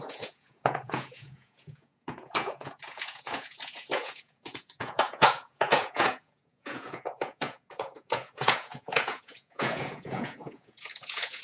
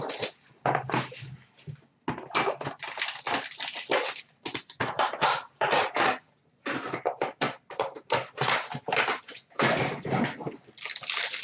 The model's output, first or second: first